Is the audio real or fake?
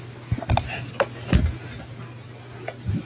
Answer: real